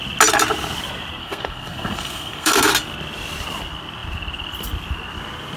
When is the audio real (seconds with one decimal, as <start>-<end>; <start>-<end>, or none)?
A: 0.0-1.2; 2.7-5.6